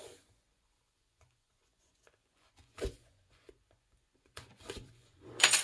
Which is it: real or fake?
fake